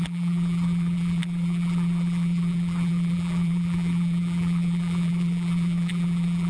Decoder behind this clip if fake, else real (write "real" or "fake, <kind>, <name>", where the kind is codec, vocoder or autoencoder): fake, vocoder, BigVGAN v2